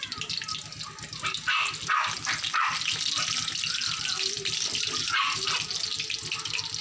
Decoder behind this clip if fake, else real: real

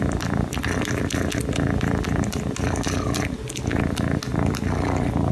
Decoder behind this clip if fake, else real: real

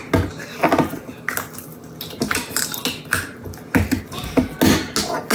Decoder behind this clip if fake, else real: real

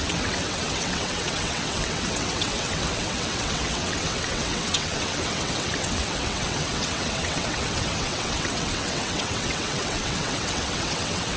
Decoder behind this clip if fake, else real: fake, vocoder, WaveNeXt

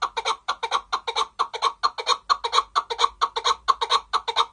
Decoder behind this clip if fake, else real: real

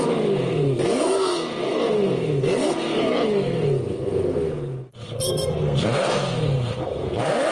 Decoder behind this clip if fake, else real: fake, codec, SNAC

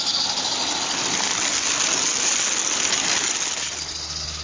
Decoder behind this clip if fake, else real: real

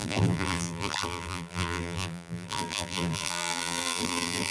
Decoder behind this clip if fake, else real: fake, vocoder, BigVGAN v2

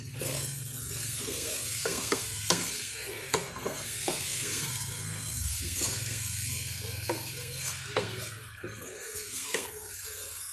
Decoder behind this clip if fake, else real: fake, codec, SNAC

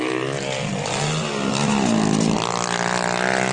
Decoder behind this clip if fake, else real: real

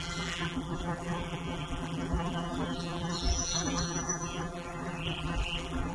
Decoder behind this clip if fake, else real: fake, vocoder, BigVGAN v2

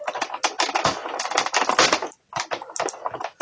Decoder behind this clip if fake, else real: real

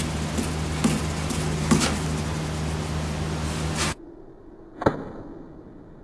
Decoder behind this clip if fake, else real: real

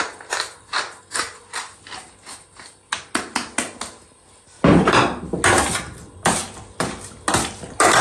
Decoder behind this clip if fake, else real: real